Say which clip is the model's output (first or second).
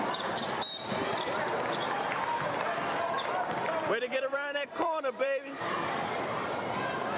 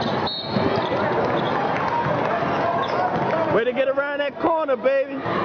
first